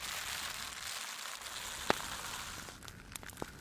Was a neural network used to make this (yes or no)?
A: no